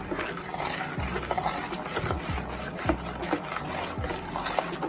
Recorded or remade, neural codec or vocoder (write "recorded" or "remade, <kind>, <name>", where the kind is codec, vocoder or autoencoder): recorded